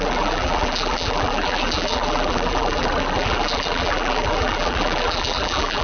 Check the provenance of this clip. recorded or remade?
remade